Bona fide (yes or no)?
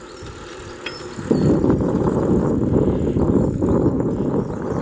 yes